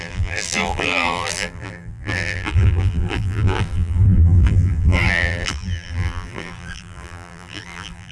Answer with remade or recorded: remade